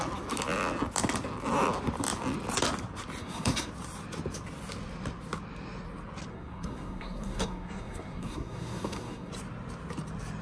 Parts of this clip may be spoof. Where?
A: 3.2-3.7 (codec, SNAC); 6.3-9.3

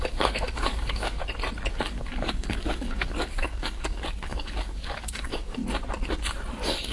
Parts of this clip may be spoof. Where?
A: 0.0-1.2 (codec, DAC); 1.7-5.6; 6.5-6.9

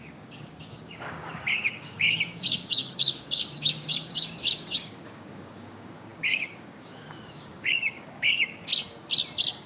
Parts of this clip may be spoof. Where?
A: 0.0-8.7 (codec, DAC)

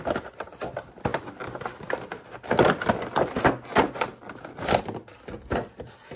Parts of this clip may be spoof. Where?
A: none